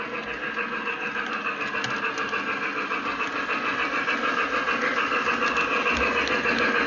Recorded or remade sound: recorded